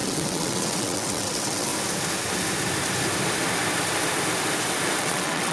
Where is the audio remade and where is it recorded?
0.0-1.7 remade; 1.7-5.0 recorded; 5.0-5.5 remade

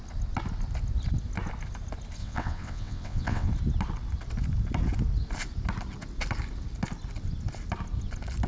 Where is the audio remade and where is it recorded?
0.0-2.2 recorded; 2.2-3.5 remade; 3.5-8.5 recorded

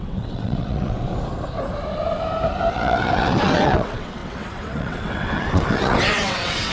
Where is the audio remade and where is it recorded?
0.0-1.1 remade; 1.1-2.7 recorded; 2.7-6.7 remade

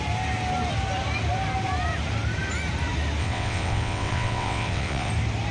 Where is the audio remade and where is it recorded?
0.0-3.2 recorded; 3.2-5.1 remade; 5.1-5.5 recorded

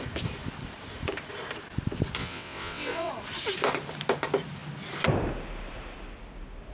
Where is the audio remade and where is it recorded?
0.0-2.2 recorded; 2.2-3.1 remade; 3.1-6.7 recorded

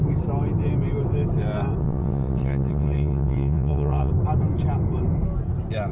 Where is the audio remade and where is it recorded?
0.0-1.8 recorded; 1.8-4.1 remade; 4.1-5.9 recorded

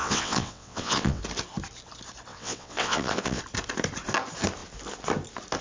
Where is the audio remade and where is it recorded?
0.0-1.2 remade; 1.2-2.3 recorded; 2.3-3.4 remade; 3.4-5.6 recorded

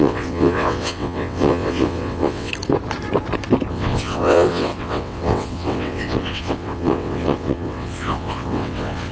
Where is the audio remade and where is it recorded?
0.0-2.5 remade; 2.5-3.7 recorded; 3.7-9.1 remade